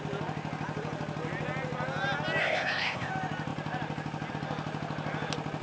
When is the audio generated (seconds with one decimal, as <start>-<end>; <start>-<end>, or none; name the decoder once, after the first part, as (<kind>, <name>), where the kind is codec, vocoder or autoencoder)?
2.4-3.1 (codec, ZipCodec)